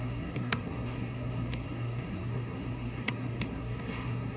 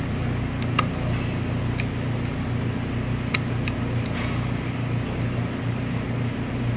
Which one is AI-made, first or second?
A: first